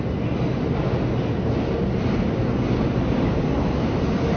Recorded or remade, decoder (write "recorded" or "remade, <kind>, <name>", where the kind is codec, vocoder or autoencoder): recorded